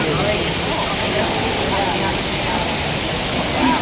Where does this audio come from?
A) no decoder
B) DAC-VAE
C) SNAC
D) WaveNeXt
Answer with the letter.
A